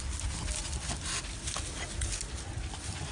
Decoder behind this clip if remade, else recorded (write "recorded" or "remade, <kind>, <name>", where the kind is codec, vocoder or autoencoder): recorded